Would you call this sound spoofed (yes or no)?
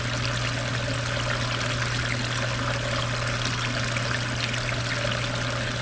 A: no